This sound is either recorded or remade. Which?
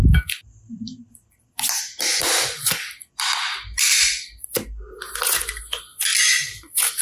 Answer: recorded